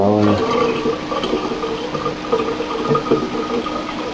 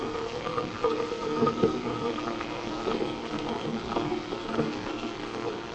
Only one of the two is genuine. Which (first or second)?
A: first